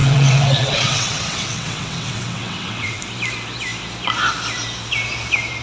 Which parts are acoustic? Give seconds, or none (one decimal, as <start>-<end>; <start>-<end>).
3.0-5.6